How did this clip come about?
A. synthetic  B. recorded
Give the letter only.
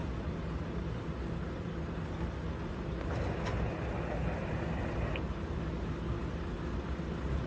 B